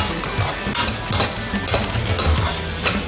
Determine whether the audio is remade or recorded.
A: recorded